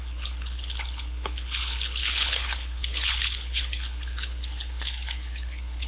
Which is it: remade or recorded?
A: remade